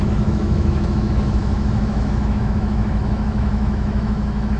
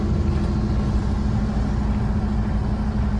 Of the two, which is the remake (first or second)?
first